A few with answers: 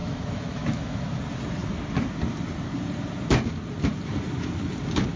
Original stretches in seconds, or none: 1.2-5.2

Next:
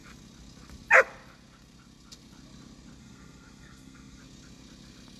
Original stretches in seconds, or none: 0.0-3.0; 4.2-5.2

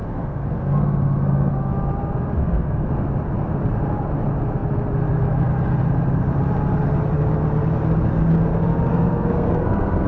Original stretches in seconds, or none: 1.5-2.4; 2.9-8.9

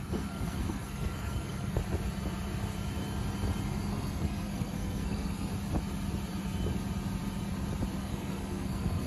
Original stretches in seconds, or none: 1.8-3.9; 5.5-8.0

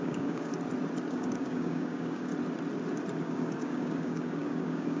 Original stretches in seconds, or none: 0.5-1.1; 2.3-3.2